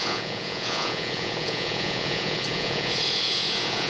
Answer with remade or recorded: remade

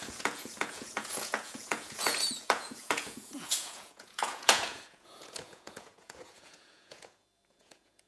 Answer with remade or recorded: remade